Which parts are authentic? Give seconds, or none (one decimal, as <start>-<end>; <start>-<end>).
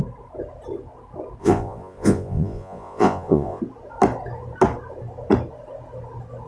0.0-1.4; 3.6-6.5